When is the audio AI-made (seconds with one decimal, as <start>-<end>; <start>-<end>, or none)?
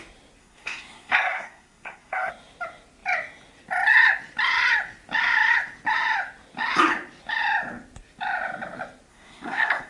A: 0.4-2.3; 9.1-9.9